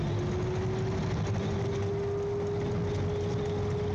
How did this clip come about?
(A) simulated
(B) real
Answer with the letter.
B